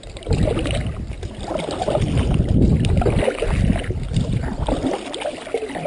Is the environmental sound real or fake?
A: real